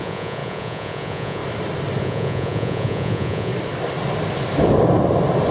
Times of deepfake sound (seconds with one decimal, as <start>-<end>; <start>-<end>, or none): 0.0-1.4; 2.0-3.5